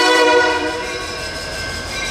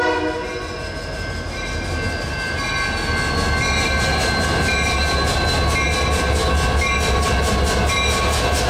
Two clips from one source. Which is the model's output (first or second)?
first